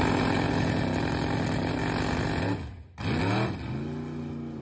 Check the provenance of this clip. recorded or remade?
recorded